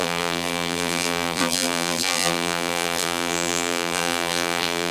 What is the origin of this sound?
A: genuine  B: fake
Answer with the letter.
B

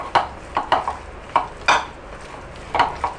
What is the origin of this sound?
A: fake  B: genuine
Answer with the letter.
B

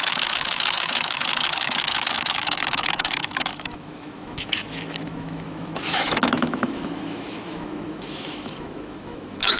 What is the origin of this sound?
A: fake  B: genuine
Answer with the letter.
A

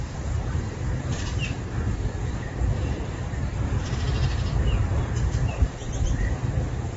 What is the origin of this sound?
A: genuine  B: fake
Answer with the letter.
B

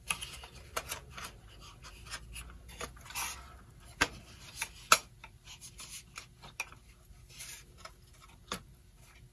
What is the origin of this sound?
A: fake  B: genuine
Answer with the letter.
B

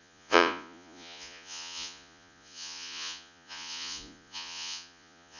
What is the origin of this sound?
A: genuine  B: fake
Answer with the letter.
B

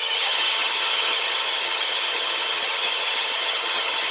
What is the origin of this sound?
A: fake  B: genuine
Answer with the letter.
A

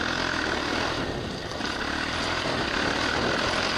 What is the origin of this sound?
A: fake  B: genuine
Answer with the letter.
A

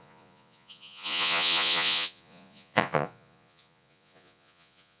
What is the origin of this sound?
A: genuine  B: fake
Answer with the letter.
B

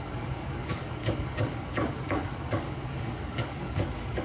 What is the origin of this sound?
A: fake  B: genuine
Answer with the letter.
A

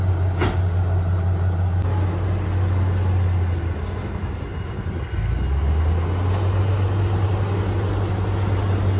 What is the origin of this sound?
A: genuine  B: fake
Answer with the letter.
A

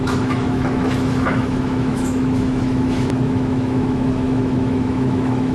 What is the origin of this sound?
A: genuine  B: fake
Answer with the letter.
B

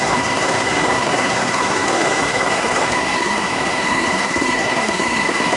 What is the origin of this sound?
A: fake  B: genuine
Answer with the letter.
A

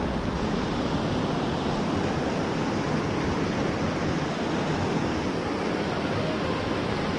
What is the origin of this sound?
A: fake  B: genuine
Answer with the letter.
B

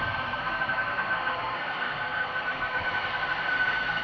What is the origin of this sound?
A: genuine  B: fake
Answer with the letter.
B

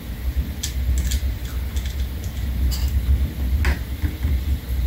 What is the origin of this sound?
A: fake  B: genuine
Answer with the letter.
B